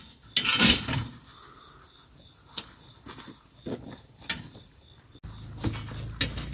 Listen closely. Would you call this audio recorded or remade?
recorded